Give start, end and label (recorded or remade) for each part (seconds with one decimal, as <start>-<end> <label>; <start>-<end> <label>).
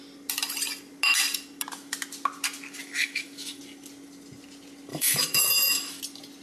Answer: 0.0-2.8 recorded; 2.8-3.6 remade; 3.6-4.9 recorded; 4.9-6.0 remade; 6.0-6.4 recorded